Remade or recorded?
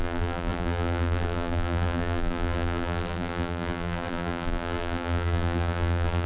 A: remade